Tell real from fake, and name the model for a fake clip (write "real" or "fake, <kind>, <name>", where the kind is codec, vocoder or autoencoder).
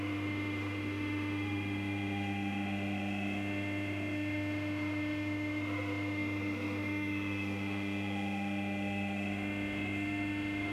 fake, autoencoder, DAC-VAE